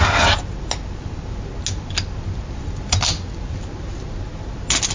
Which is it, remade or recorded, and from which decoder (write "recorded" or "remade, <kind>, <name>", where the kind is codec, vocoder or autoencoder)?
recorded